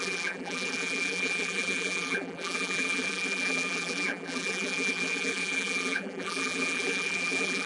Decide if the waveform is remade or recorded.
remade